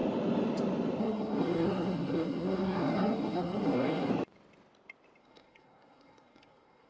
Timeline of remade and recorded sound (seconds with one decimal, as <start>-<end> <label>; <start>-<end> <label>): 0.0-1.0 recorded; 1.0-4.1 remade; 4.1-5.2 recorded; 5.2-6.9 remade